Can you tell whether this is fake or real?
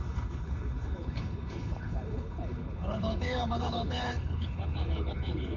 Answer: fake